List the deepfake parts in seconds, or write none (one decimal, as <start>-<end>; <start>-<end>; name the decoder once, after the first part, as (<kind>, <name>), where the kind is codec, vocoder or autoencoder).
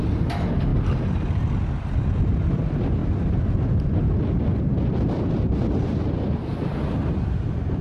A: none